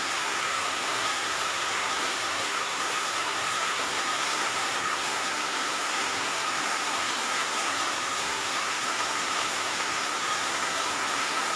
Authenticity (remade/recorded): remade